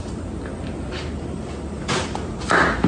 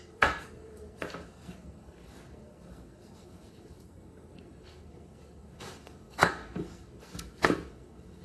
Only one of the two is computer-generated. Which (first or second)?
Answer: second